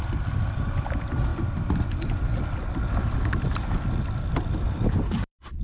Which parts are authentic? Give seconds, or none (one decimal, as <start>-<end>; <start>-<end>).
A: 1.3-4.3